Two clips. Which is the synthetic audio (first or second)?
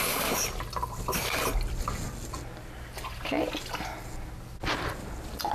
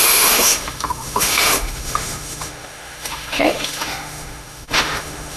second